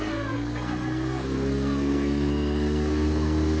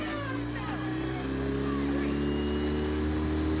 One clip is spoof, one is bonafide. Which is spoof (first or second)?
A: first